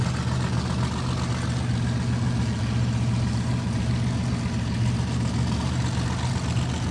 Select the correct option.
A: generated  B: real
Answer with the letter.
B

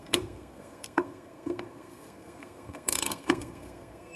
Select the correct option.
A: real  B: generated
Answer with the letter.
B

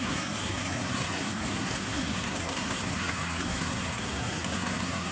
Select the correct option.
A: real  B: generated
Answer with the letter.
B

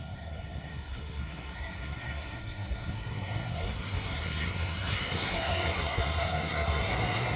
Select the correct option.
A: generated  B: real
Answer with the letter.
A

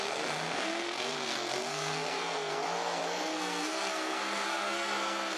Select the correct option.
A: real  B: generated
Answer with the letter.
B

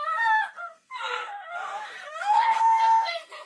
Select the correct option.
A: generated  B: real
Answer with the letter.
A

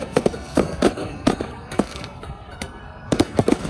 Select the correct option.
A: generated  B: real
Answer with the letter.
A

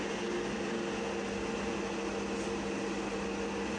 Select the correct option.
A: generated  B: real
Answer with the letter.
B